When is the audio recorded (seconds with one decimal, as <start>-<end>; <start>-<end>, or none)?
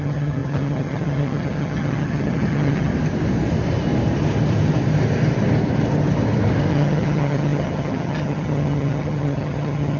2.9-6.7